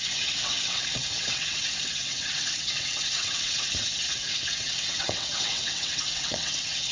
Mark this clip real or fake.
fake